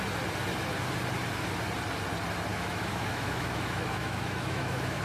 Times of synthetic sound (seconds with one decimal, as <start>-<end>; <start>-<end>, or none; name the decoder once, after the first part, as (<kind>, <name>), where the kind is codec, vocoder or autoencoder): 2.5-5.0 (autoencoder, DAC-VAE)